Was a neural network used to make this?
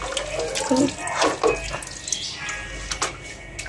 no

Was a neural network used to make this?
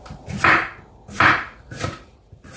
yes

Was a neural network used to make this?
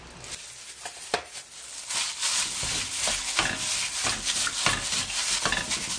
no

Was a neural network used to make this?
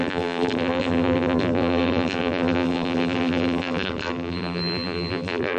yes